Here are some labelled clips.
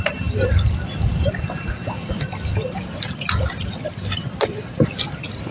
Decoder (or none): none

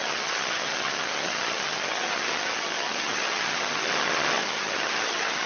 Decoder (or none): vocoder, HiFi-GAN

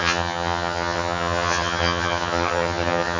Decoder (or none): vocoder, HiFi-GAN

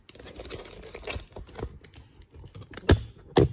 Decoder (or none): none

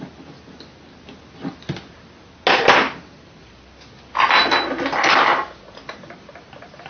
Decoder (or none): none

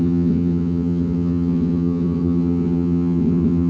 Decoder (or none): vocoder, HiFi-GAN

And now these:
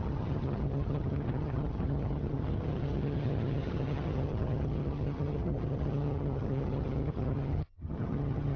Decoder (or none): vocoder, HiFi-GAN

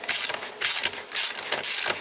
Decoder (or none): none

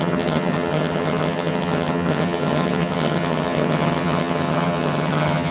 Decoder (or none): vocoder, HiFi-GAN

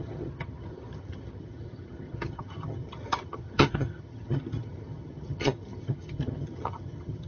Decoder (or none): vocoder, HiFi-GAN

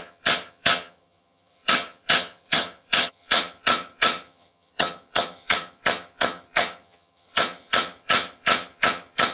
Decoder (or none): vocoder, HiFi-GAN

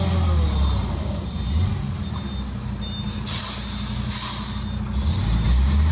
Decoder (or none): none